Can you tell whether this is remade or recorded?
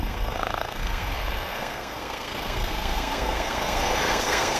remade